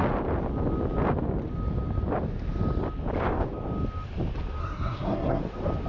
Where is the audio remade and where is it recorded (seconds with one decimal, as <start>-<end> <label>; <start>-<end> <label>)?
0.0-4.6 recorded; 4.6-5.4 remade; 5.4-5.9 recorded